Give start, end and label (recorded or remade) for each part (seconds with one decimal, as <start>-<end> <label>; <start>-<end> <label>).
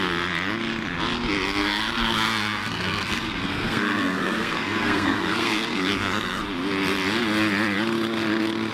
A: 0.0-1.6 recorded; 1.6-6.4 remade; 6.4-8.7 recorded